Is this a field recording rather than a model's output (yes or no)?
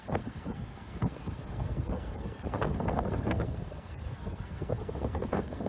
no